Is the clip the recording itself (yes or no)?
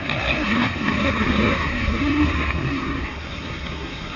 no